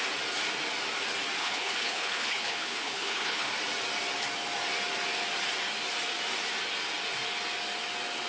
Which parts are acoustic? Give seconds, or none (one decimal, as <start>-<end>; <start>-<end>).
0.0-1.4; 3.5-8.3